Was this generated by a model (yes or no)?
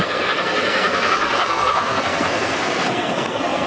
yes